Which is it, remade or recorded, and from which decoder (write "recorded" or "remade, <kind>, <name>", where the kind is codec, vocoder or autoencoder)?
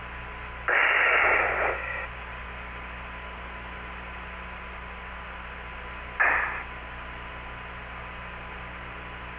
recorded